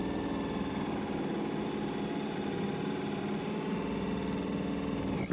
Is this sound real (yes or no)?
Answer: yes